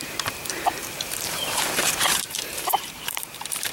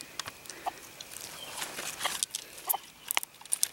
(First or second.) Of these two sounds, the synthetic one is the first